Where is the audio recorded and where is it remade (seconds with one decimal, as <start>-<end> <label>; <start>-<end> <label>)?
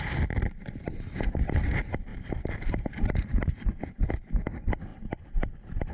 0.0-5.9 recorded